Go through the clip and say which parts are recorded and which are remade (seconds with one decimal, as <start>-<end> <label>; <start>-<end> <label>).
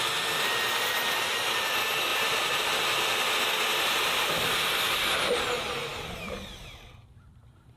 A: 0.0-2.1 recorded; 2.1-2.6 remade; 2.6-3.7 recorded; 3.7-4.7 remade; 4.7-7.8 recorded